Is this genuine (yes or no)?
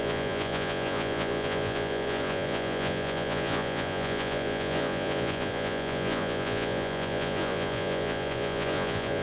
no